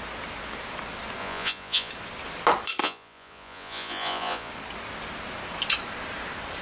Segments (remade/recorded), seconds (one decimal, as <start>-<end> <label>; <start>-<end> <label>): 0.0-1.2 recorded; 1.2-1.9 remade; 1.9-2.8 recorded; 2.8-4.5 remade; 4.5-6.6 recorded